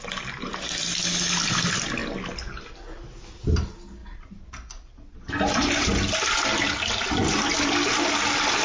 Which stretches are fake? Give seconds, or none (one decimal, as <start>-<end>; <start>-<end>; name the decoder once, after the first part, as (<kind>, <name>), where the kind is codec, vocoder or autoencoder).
none

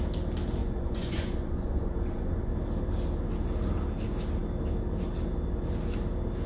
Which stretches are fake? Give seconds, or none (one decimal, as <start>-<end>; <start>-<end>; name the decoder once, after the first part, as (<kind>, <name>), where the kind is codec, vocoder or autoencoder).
0.6-2.5 (vocoder, Vocos)

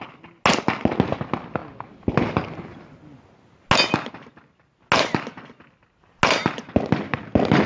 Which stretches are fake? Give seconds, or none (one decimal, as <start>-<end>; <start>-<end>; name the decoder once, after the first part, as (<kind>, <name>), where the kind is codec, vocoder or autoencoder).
none